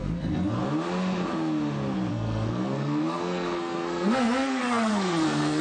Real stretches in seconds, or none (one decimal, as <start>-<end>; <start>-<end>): 0.6-2.1